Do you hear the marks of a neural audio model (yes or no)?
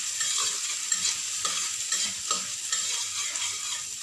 no